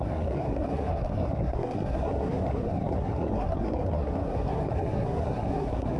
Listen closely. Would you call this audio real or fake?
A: fake